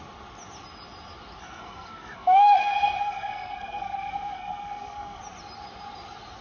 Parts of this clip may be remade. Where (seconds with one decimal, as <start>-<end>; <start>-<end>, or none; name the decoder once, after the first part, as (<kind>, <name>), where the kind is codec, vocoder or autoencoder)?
1.4-5.2 (codec, SNAC)